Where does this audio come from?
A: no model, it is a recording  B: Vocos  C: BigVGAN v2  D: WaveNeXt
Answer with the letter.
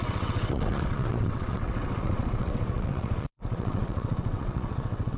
D